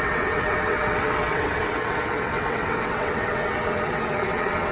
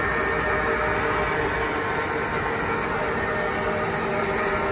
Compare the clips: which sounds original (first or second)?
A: second